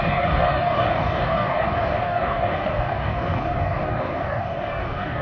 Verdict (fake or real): fake